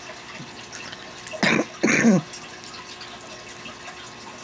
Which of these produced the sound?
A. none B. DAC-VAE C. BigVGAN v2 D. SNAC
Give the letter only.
A